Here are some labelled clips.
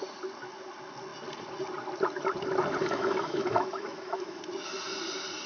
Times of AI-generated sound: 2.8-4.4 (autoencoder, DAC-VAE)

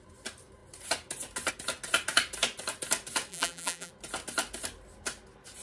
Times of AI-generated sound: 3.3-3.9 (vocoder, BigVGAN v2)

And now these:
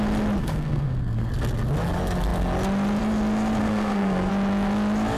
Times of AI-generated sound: 0.4-1.3 (codec, SNAC); 3.6-4.3